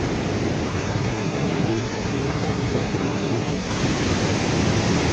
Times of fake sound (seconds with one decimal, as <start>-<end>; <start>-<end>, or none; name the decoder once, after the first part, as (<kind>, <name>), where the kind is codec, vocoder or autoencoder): 0.7-3.8 (codec, SNAC)